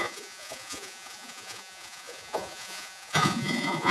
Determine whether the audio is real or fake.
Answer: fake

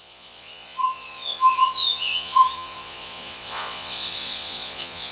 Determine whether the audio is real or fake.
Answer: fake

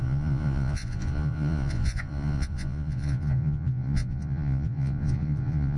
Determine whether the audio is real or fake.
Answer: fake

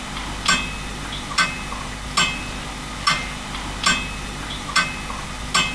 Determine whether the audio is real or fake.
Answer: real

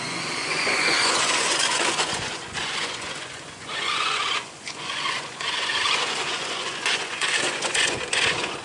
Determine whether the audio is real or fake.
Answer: fake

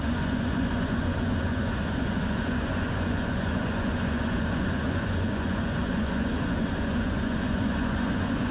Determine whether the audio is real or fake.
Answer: fake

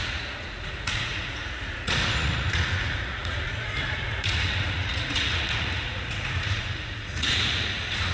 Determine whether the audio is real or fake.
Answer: fake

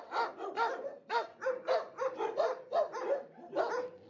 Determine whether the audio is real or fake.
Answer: real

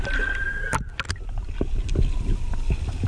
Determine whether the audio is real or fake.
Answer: real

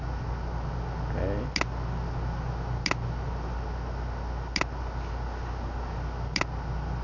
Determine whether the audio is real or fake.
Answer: real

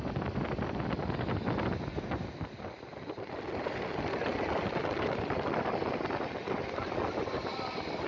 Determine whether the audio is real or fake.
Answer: real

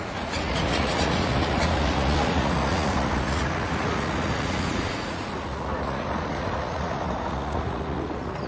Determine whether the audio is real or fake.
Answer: fake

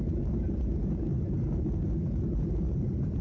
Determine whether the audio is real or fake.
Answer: real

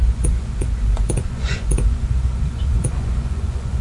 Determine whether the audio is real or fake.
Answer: fake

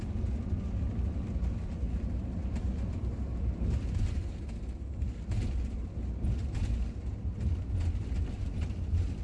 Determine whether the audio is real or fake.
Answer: real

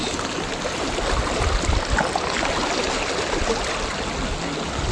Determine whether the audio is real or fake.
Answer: real